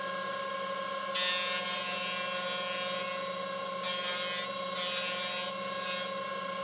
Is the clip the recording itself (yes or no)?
yes